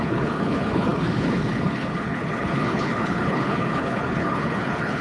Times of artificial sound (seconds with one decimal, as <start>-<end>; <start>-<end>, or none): 0.0-5.0